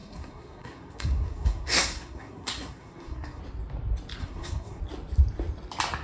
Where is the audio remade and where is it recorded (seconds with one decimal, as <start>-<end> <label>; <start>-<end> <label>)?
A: 0.0-3.4 remade; 3.4-4.2 recorded; 4.2-4.8 remade; 4.8-6.0 recorded